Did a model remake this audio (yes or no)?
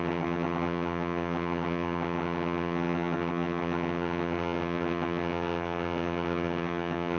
yes